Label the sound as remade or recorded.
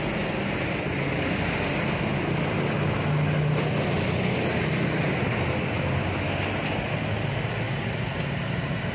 recorded